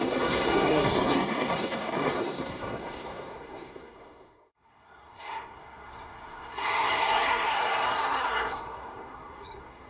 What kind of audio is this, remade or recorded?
remade